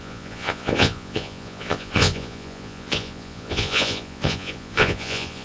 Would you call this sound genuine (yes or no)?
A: no